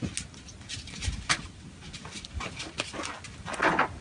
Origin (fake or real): real